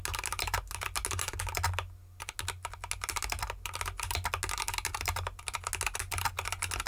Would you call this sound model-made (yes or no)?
no